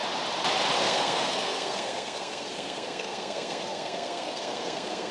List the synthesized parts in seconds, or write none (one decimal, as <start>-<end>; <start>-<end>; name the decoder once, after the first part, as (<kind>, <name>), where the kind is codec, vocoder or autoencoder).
0.8-5.1 (codec, SNAC)